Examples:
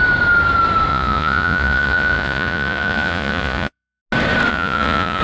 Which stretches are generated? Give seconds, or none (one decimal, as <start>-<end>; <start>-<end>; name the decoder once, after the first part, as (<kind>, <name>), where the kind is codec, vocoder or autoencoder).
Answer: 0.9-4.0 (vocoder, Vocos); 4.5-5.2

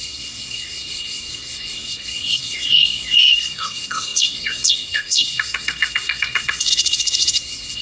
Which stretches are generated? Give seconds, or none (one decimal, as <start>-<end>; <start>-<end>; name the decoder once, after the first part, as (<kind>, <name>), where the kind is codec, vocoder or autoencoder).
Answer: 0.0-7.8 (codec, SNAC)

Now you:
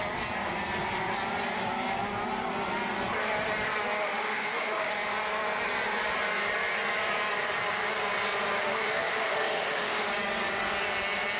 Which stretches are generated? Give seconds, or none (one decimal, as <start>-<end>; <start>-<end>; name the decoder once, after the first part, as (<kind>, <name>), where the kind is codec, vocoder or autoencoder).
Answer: 4.0-4.9 (autoencoder, DAC-VAE); 8.6-10.1

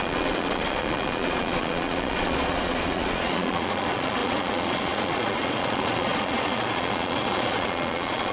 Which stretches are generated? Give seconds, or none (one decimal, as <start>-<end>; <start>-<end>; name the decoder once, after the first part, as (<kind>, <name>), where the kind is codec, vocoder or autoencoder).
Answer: 0.0-8.3 (vocoder, Vocos)

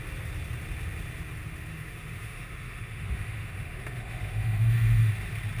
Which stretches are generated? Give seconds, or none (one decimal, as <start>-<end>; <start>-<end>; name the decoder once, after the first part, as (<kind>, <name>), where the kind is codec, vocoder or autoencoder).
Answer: 1.7-5.1 (autoencoder, DAC-VAE)

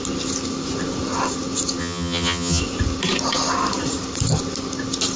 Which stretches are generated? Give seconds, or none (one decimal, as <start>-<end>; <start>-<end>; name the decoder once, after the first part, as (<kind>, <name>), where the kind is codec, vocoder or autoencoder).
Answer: 1.8-2.6 (vocoder, HiFi-GAN)

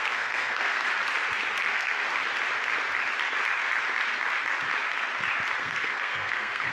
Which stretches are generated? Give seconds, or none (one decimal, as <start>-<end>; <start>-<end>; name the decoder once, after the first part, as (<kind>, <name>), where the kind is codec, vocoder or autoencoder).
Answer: 0.0-0.9 (codec, SNAC); 1.6-2.0; 5.6-6.7

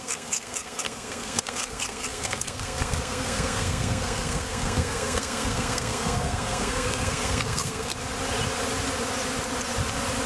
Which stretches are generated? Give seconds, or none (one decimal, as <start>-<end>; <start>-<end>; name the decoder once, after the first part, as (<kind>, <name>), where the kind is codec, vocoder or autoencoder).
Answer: 0.0-7.9 (codec, SNAC)